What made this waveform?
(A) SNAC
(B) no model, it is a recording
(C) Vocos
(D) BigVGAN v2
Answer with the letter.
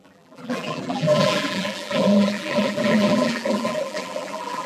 D